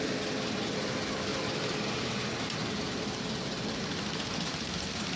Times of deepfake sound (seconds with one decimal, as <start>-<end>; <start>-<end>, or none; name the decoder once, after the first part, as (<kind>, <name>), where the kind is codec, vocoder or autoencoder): 1.3-2.0 (vocoder, BigVGAN v2); 2.6-5.2

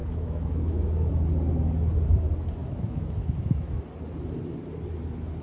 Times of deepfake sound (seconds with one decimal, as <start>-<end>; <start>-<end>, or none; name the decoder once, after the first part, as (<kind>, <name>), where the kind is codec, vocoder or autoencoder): 0.0-1.1 (autoencoder, DAC-VAE); 2.6-3.8

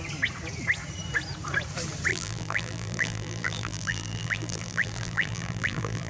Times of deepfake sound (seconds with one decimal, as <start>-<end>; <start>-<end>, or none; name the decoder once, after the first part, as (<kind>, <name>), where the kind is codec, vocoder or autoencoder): 2.1-6.1 (vocoder, BigVGAN v2)

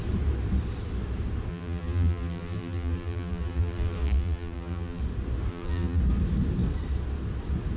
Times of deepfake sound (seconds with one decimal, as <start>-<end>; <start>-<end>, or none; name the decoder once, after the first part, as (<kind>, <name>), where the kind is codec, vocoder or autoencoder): 1.5-5.0 (vocoder, BigVGAN v2); 5.5-6.0

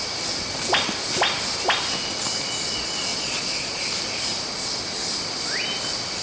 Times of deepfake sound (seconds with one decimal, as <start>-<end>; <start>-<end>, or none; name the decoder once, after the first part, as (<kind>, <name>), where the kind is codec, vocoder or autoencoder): 3.1-3.8 (vocoder, Vocos)

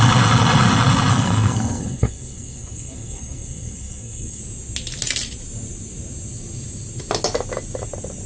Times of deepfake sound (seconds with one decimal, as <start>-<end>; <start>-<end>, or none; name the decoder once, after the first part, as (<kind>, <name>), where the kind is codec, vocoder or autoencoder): 1.1-4.4 (codec, SNAC)

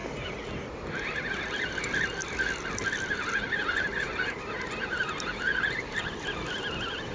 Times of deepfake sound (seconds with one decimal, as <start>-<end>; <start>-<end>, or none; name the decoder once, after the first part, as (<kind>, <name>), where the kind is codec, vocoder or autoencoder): 0.0-1.8 (vocoder, BigVGAN v2); 2.2-3.3